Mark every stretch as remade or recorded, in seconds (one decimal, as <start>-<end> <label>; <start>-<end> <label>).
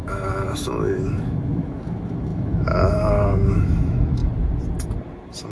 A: 0.0-4.2 remade; 4.2-5.5 recorded